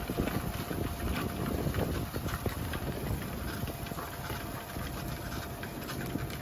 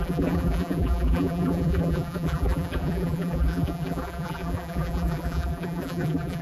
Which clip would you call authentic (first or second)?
first